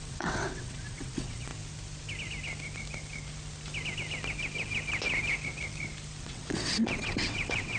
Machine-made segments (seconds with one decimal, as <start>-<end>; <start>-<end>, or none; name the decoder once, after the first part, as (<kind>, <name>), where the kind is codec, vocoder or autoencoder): 0.0-1.5 (vocoder, WaveNeXt); 6.2-7.8